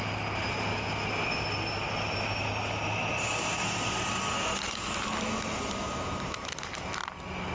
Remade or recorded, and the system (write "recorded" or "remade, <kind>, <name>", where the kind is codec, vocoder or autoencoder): recorded